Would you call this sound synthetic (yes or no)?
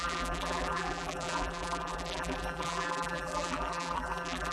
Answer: yes